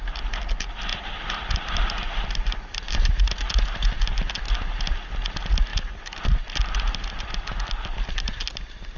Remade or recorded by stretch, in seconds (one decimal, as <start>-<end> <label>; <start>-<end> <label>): 0.0-0.9 recorded; 0.9-3.1 remade; 3.1-9.0 recorded